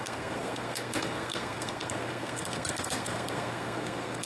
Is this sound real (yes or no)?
no